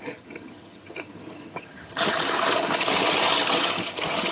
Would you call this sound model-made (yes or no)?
yes